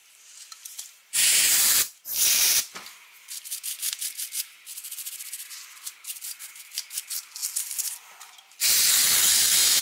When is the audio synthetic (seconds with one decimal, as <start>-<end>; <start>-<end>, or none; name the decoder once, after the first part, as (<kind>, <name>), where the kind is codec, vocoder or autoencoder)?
0.0-2.7 (vocoder, BigVGAN v2); 4.7-6.4; 7.4-8.2